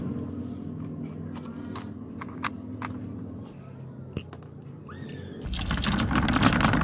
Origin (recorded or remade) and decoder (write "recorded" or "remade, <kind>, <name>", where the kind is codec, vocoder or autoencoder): recorded